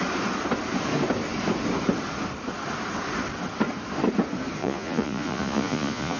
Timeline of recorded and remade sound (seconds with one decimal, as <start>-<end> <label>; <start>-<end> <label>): 0.0-4.6 recorded; 4.6-6.2 remade